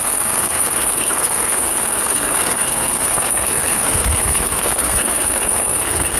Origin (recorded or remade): remade